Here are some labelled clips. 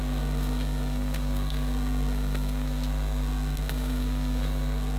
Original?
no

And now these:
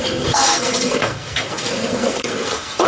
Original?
no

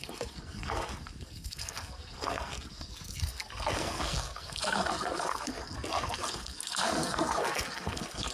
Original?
no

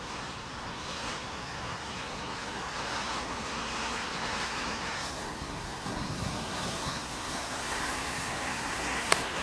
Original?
no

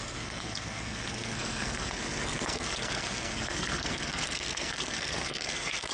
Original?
no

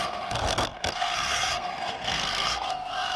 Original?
no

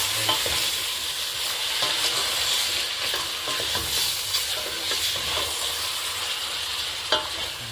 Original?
yes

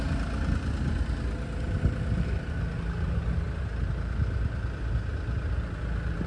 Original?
yes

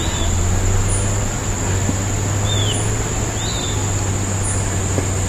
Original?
yes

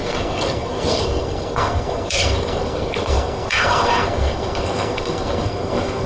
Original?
no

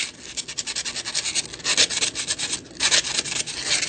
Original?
yes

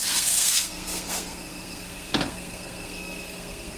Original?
no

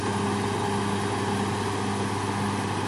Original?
yes